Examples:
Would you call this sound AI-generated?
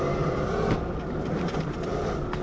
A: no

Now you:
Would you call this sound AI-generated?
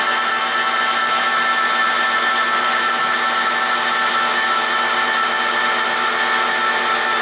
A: no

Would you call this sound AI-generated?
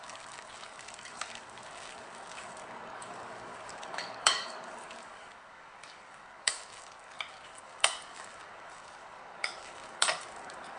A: yes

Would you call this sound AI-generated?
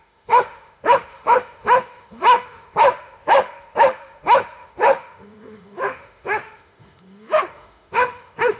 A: yes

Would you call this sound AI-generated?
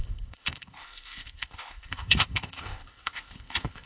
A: yes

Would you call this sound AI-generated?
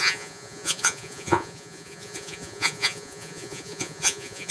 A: yes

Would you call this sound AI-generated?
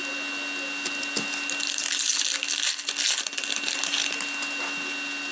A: no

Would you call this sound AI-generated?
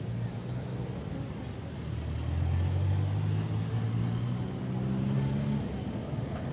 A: no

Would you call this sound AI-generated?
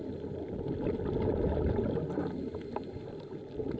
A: no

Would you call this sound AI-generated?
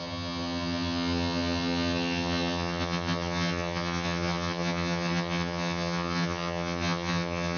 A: yes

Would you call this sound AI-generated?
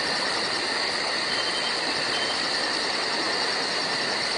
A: no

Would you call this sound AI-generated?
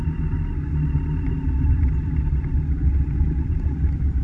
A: no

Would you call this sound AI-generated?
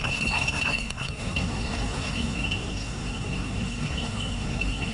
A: yes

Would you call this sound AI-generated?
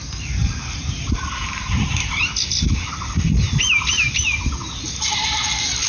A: no